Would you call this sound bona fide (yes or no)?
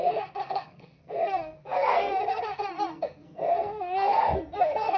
no